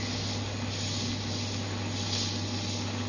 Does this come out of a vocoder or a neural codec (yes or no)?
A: no